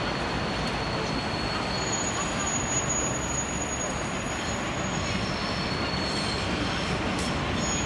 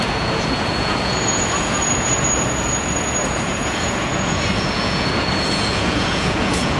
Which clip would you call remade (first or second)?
second